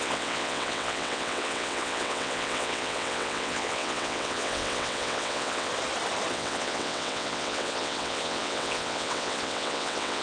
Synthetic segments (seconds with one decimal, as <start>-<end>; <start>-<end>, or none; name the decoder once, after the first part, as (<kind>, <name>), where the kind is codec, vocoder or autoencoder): 0.0-5.7 (vocoder, WaveNeXt); 6.3-10.2